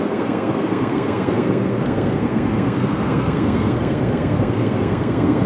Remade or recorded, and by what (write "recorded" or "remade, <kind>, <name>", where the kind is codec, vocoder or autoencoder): remade, codec, SNAC